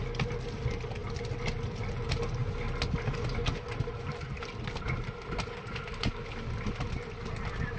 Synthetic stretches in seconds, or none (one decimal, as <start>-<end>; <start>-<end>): none